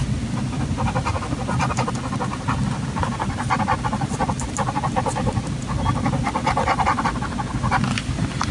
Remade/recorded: recorded